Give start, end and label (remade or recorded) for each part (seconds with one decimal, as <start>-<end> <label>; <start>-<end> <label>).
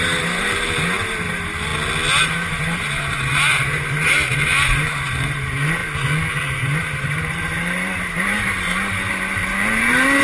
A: 0.0-1.7 remade; 1.7-2.2 recorded; 2.2-5.8 remade; 5.8-6.6 recorded; 6.6-10.2 remade